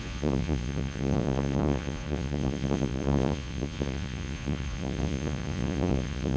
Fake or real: fake